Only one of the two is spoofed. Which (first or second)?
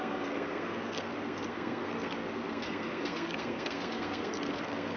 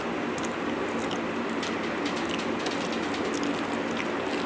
first